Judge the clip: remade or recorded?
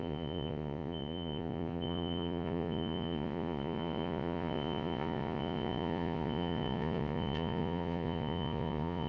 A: remade